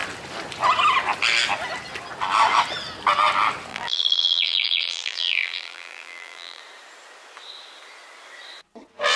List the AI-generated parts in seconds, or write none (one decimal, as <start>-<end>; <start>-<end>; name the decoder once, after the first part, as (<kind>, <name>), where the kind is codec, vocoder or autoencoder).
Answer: 3.7-6.6 (vocoder, BigVGAN v2)

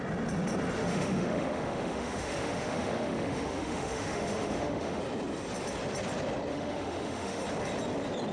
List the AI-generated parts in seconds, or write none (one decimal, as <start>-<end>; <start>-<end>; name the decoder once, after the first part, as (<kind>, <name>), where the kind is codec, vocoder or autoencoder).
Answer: 0.8-5.0 (autoencoder, DAC-VAE); 6.5-7.4